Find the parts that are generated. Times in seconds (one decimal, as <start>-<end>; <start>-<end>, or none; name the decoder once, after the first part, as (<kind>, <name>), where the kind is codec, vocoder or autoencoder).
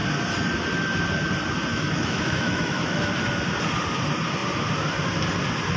1.7-3.1 (autoencoder, DAC-VAE)